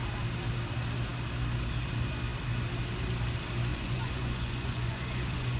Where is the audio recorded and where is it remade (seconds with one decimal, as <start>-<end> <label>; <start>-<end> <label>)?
0.0-3.7 recorded; 3.7-5.6 remade